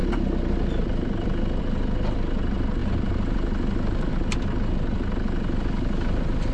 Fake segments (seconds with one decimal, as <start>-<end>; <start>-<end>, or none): none